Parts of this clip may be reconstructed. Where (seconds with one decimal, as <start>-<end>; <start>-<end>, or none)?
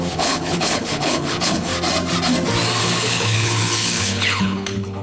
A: 0.0-1.7; 2.8-5.0